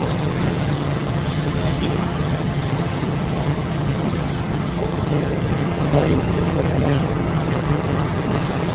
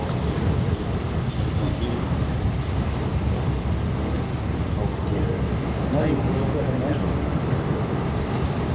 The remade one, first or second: first